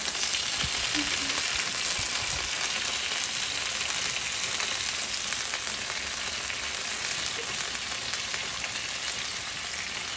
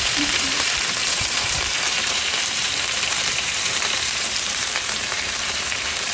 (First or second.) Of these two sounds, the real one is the first